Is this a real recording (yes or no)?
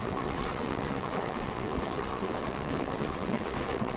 no